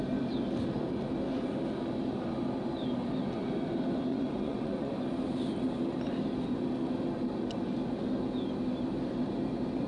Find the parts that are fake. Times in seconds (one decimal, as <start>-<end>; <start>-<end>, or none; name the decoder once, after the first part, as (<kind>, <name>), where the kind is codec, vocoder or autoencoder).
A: 4.1-4.9 (vocoder, Vocos)